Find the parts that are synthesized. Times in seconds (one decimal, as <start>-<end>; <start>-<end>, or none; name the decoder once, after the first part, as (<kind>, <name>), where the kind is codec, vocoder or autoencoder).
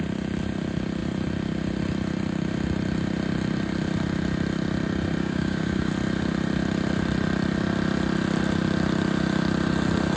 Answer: 5.2-5.9 (codec, DAC)